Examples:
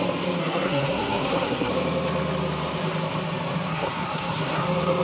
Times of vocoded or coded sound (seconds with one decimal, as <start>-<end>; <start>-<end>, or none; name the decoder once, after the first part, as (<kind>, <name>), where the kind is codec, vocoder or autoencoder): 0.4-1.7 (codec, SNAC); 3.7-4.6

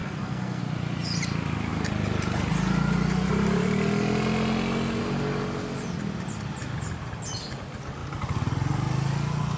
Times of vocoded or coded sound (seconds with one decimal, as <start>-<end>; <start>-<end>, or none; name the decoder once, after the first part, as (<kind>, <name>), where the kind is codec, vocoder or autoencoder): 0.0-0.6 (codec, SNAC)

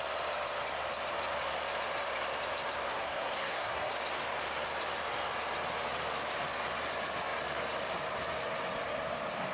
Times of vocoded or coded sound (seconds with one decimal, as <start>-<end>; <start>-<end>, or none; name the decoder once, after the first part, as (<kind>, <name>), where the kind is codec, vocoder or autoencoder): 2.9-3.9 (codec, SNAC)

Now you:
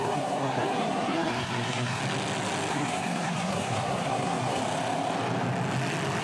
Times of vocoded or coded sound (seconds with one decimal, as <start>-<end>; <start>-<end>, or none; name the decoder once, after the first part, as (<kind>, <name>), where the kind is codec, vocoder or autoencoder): 0.0-2.0 (codec, SNAC); 2.7-4.6

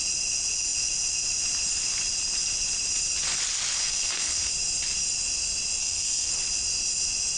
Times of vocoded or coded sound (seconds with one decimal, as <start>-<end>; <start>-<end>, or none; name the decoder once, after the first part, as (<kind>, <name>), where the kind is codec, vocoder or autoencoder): 3.8-4.5 (codec, SNAC); 5.8-6.3

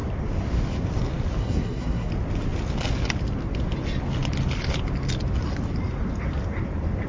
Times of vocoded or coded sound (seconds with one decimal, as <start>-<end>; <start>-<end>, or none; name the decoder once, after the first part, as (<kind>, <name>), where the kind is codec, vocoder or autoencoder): 1.4-2.1 (codec, SNAC)

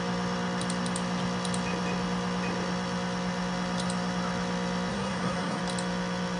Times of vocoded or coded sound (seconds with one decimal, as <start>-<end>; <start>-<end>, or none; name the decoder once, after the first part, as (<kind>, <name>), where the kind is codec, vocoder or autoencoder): 4.9-5.6 (codec, SNAC)